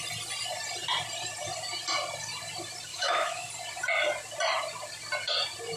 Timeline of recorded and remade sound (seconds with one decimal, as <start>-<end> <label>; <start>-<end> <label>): 0.0-2.9 recorded; 2.9-3.5 remade; 3.5-5.8 recorded